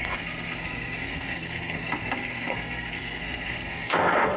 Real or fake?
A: fake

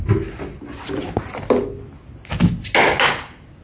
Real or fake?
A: real